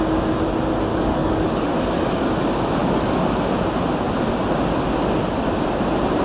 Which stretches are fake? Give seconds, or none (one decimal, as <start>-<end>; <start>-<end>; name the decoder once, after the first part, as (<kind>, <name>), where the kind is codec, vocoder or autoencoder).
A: 0.9-2.3 (codec, DAC)